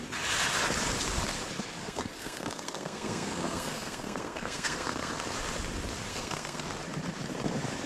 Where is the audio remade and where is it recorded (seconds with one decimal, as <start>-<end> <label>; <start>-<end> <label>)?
0.0-1.8 recorded; 1.8-5.1 remade; 5.1-6.1 recorded; 6.1-6.6 remade; 6.6-7.9 recorded